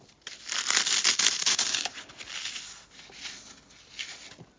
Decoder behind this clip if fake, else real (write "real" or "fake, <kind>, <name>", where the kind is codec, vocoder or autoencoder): real